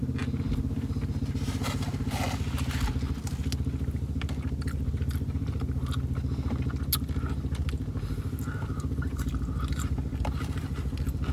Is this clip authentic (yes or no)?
yes